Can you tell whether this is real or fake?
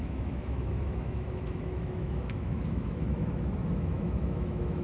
fake